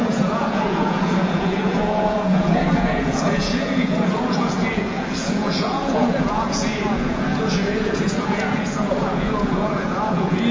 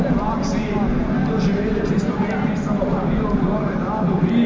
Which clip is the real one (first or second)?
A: second